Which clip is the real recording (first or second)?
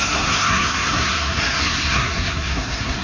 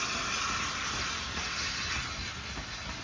second